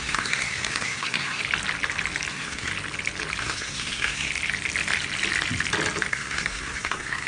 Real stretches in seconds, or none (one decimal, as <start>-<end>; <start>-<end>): 1.4-2.3; 2.7-3.4; 4.3-6.1